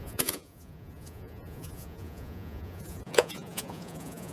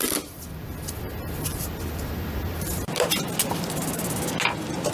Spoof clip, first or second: first